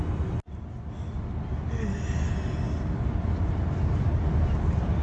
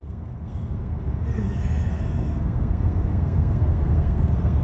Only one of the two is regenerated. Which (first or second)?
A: second